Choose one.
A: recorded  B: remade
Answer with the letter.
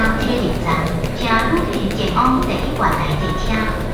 A